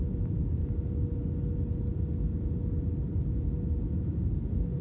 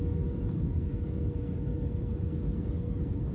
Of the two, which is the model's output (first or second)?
second